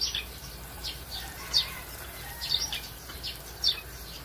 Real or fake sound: fake